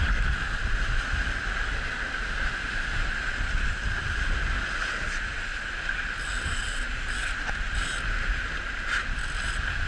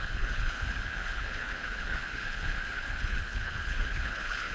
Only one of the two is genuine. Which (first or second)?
first